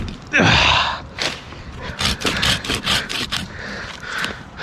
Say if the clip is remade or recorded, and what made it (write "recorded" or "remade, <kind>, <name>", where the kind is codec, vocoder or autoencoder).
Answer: remade, vocoder, BigVGAN v2